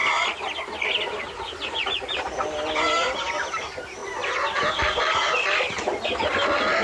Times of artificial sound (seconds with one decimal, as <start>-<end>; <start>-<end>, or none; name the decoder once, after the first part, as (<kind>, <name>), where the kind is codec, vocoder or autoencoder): none